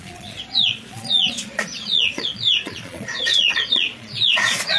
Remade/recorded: remade